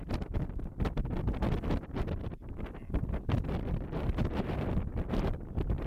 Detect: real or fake fake